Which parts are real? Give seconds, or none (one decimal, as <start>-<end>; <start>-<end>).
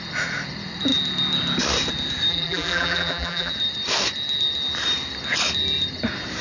0.0-2.3; 3.5-6.4